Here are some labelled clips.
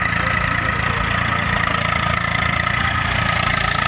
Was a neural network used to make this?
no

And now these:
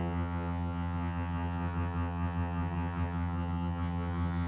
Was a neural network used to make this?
yes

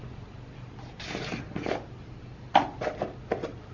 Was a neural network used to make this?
no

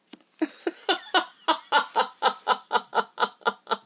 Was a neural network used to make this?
no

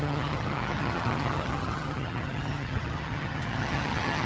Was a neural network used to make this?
yes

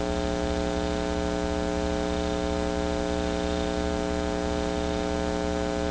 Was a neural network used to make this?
no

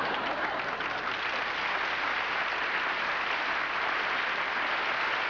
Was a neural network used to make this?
no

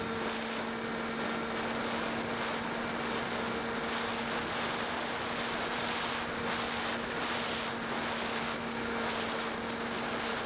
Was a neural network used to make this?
no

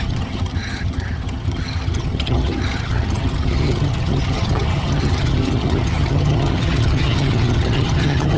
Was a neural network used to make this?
yes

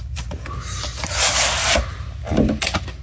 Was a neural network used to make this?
no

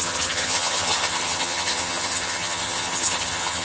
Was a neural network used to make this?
yes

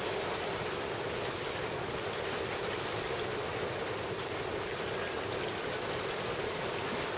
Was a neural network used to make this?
no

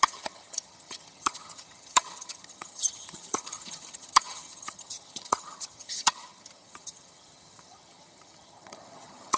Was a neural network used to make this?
yes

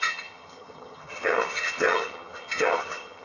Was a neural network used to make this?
yes